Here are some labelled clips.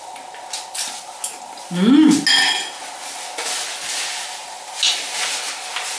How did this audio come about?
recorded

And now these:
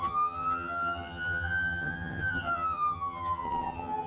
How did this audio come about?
remade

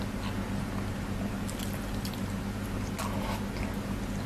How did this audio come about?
recorded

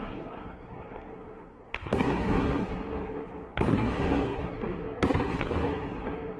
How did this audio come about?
remade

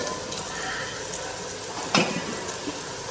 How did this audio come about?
recorded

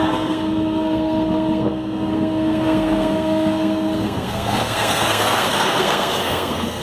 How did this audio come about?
remade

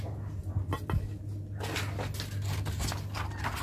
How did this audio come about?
recorded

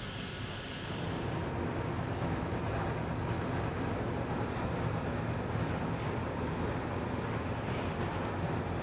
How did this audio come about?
recorded